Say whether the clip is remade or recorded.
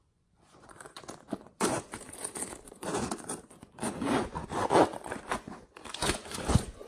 remade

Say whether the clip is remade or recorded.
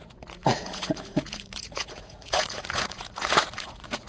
remade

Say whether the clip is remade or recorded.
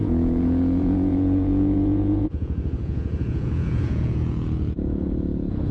remade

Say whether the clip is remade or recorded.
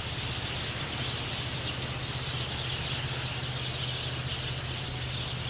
recorded